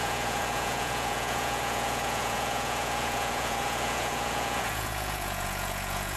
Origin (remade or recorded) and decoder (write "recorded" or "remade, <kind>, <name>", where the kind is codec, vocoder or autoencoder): remade, vocoder, Vocos